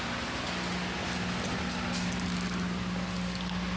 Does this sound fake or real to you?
real